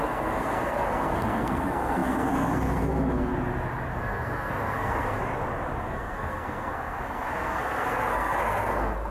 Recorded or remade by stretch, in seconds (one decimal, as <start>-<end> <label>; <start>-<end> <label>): 0.0-3.3 remade; 3.3-4.0 recorded; 4.0-5.2 remade; 5.2-5.8 recorded; 5.8-9.1 remade

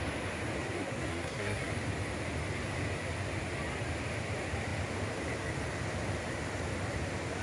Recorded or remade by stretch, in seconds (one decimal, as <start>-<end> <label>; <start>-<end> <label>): 0.0-0.6 recorded; 0.6-1.7 remade; 1.7-7.4 recorded

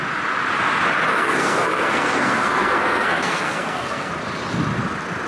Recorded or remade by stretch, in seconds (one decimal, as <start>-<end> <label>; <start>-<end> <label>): 0.0-1.1 recorded; 1.1-4.1 remade; 4.1-5.3 recorded

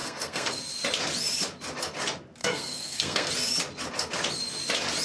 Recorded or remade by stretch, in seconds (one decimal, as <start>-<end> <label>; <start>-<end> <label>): 0.0-0.6 remade; 0.6-2.4 recorded; 2.4-3.3 remade; 3.3-5.0 recorded

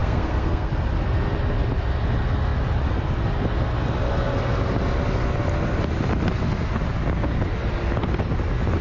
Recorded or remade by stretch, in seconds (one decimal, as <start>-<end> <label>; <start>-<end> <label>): 0.0-0.7 remade; 0.7-8.8 recorded

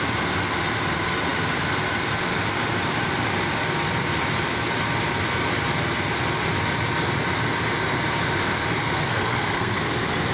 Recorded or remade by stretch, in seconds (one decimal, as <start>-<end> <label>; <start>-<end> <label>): 0.0-8.8 recorded; 8.8-9.8 remade; 9.8-10.3 recorded

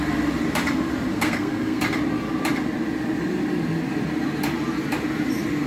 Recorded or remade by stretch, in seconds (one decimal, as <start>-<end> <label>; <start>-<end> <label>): 0.0-1.1 recorded; 1.1-1.8 remade; 1.8-5.7 recorded

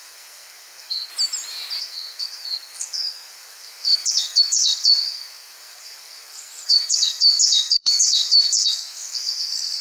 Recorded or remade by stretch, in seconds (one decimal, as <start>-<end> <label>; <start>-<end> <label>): 0.0-1.1 remade; 1.1-1.8 recorded; 1.8-9.8 remade